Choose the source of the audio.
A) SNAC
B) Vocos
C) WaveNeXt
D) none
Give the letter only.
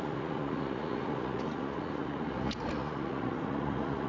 B